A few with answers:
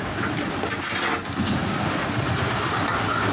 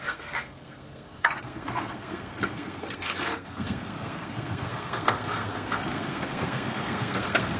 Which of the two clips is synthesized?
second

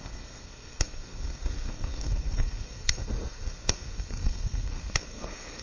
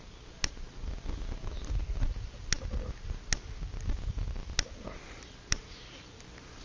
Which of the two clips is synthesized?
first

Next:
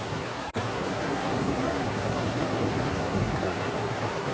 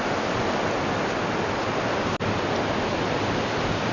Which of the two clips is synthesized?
first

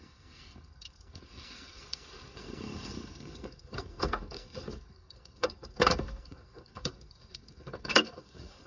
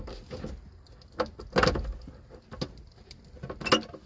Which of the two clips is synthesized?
first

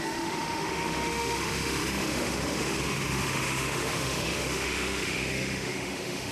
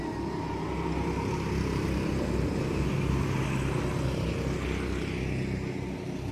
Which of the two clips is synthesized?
first